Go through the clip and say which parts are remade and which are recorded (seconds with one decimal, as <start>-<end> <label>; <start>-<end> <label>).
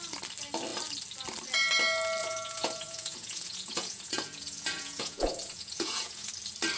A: 0.0-2.2 recorded; 2.2-6.3 remade; 6.3-6.8 recorded